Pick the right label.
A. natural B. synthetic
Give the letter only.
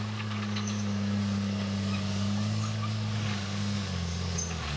B